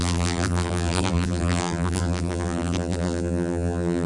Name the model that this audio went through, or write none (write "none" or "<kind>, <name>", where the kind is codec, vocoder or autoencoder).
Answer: vocoder, BigVGAN v2